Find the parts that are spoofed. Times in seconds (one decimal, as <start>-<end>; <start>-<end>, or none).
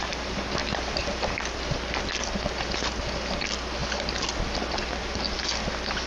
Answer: none